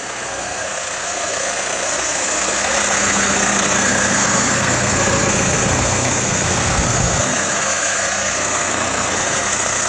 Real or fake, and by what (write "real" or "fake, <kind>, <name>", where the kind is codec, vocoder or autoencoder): fake, codec, SNAC